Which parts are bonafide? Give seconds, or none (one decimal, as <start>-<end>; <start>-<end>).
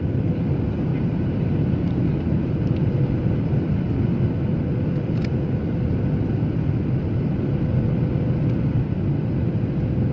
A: 0.0-0.9; 2.5-10.1